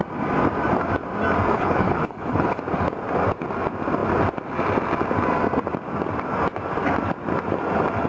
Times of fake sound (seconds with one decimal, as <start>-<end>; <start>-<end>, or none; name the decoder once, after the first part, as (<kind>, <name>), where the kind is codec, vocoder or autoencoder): 1.5-2.6 (codec, HILCodec)